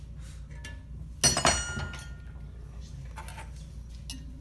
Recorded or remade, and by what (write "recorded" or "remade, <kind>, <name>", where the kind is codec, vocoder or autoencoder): recorded